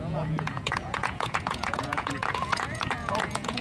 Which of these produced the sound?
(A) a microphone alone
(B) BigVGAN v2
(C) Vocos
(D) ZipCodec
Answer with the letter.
C